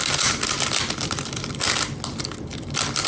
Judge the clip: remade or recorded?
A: recorded